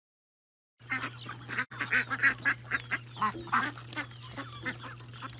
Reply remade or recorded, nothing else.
recorded